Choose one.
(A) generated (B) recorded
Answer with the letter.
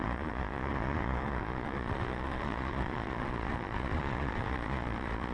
A